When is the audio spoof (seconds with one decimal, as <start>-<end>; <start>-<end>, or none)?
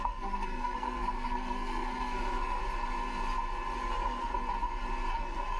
0.0-2.6; 3.9-4.3; 5.1-5.6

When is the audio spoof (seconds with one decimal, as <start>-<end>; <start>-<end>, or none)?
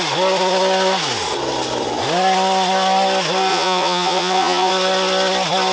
3.5-4.7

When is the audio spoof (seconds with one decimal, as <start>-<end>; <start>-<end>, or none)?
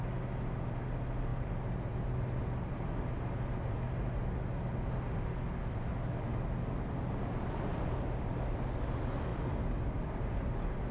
1.3-3.1; 9.3-10.3